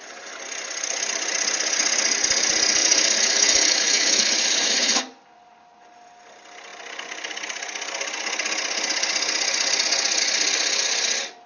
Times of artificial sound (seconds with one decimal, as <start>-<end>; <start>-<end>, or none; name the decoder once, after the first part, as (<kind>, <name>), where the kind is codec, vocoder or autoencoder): 2.8-5.0 (autoencoder, DAC-VAE)